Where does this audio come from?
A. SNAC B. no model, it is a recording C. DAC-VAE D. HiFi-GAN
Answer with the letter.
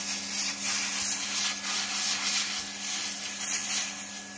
B